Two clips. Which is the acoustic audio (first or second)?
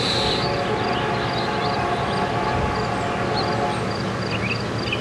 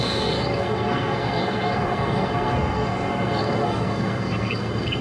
first